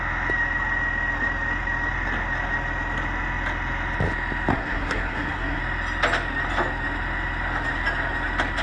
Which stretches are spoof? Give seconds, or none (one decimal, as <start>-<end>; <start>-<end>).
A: 4.5-5.6